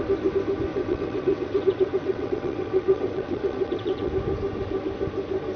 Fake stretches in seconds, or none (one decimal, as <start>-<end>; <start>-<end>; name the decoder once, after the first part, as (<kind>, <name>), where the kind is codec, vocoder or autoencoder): 0.7-4.1 (vocoder, WaveNeXt)